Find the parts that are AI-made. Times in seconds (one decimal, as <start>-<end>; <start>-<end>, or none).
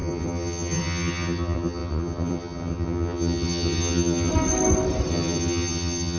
0.0-4.3; 5.1-6.2